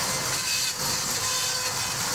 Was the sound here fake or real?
real